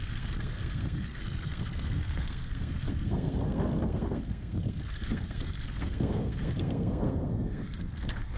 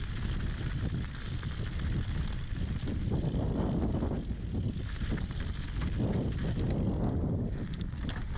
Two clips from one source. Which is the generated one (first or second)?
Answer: first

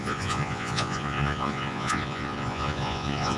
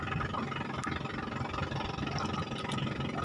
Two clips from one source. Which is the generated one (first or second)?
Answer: first